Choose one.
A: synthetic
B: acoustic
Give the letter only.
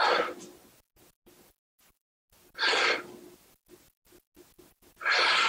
B